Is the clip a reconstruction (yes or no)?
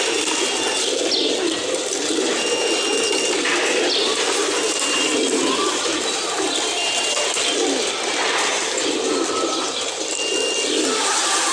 no